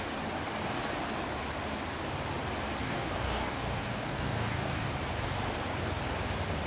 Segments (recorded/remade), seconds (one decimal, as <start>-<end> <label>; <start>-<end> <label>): 0.0-2.8 recorded; 2.8-4.9 remade; 4.9-6.7 recorded